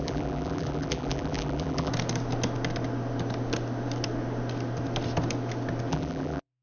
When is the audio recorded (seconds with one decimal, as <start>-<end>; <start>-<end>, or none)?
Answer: 1.9-5.9